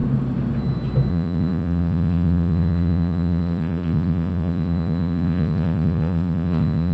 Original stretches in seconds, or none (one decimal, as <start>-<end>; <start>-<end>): 0.0-1.1